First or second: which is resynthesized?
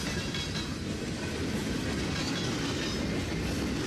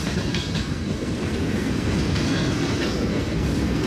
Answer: second